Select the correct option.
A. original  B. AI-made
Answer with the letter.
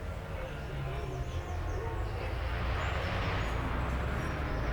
A